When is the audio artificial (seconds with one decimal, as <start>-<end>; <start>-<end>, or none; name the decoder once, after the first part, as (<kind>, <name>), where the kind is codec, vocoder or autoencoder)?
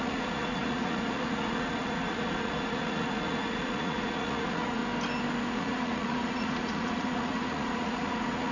0.0-4.8 (vocoder, Vocos); 5.5-8.5